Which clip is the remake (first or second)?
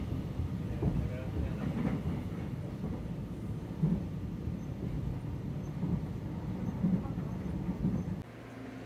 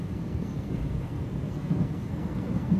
second